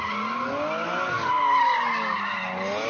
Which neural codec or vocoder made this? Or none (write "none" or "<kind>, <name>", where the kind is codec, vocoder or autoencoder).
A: none